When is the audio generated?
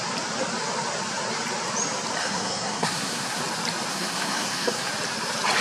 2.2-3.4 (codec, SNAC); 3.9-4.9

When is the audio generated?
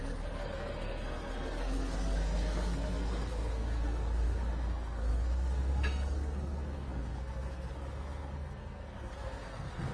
0.0-9.9 (codec, SNAC)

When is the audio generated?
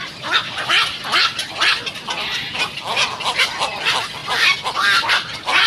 none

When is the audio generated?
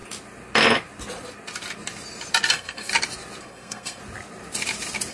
2.5-2.9 (codec, SNAC); 3.4-4.0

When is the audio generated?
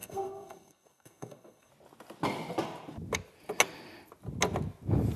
0.0-1.7 (codec, SNAC)